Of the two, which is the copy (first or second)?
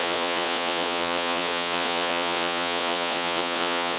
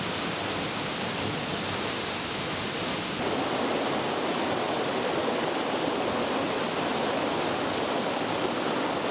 first